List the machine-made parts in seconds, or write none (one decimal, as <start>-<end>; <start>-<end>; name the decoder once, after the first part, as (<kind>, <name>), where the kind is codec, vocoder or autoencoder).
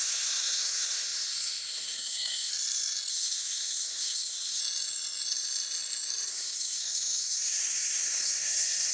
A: 0.0-2.5 (codec, SNAC); 3.1-4.6; 6.3-8.9